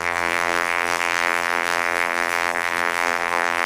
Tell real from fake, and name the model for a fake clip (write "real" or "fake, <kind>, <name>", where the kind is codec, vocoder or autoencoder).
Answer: fake, vocoder, BigVGAN v2